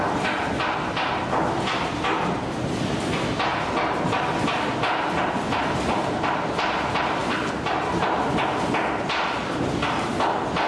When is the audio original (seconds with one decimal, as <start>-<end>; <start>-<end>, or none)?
0.0-10.7